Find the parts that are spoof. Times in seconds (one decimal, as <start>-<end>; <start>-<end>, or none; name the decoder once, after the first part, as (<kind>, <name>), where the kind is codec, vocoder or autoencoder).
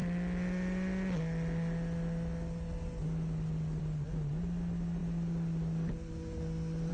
none